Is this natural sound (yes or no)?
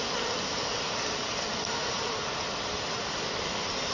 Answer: yes